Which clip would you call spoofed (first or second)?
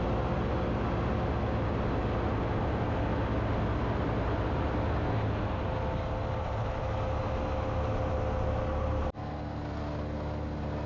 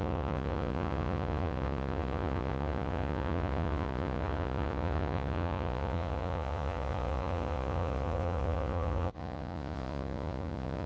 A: second